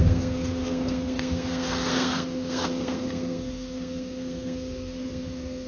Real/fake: fake